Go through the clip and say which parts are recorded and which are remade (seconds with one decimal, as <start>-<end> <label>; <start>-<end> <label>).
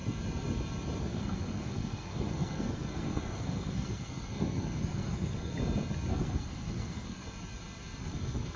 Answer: 0.0-1.0 recorded; 1.0-5.5 remade; 5.5-6.1 recorded; 6.1-7.2 remade; 7.2-8.0 recorded; 8.0-8.6 remade